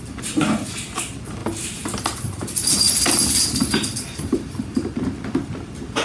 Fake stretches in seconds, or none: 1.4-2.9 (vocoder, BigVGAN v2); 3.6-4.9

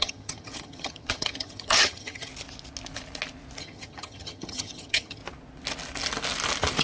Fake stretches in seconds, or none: 0.0-2.3 (vocoder, HiFi-GAN); 3.6-5.2

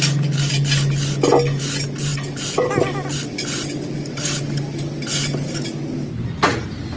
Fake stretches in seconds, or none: none

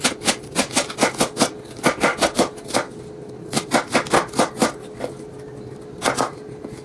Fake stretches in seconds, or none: none